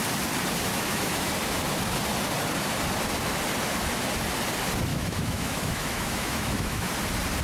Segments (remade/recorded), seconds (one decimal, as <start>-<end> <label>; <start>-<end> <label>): 0.0-0.7 recorded; 0.7-1.3 remade; 1.3-4.9 recorded; 4.9-6.9 remade; 6.9-7.4 recorded